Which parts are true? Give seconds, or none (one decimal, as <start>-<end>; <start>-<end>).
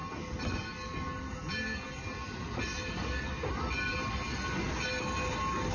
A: 0.6-5.7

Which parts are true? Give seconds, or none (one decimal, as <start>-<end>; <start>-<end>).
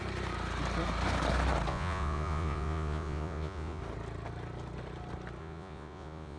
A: 0.0-1.7; 3.8-5.4